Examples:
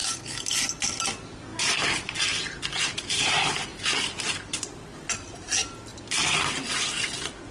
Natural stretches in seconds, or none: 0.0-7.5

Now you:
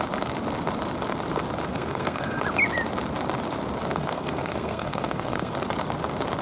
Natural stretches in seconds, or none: 0.0-1.7; 2.4-3.9; 5.5-6.4

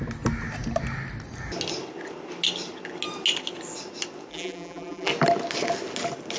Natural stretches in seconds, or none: 0.0-4.3; 5.1-6.4

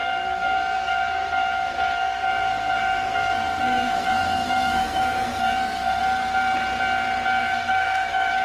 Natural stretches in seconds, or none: 6.0-7.4